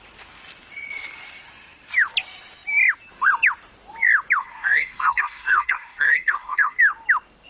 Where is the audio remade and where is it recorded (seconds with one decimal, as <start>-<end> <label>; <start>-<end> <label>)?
0.0-4.4 recorded; 4.4-6.8 remade; 6.8-7.5 recorded